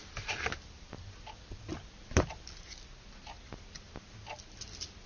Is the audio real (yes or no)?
yes